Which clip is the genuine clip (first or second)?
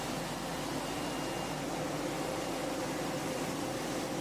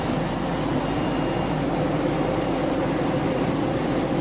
first